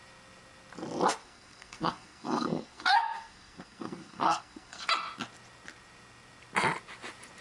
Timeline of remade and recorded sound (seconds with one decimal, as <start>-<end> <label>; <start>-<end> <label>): 0.0-1.2 recorded; 1.2-4.9 remade; 4.9-7.4 recorded